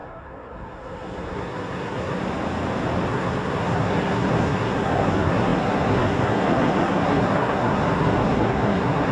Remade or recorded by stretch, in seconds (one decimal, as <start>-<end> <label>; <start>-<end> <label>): 0.0-2.2 remade; 2.2-3.1 recorded; 3.1-9.1 remade